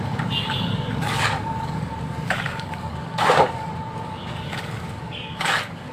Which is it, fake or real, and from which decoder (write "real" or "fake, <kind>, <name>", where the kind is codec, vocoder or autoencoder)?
fake, codec, DAC